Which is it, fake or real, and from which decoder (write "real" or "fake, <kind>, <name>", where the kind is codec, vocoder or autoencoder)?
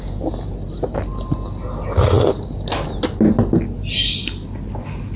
real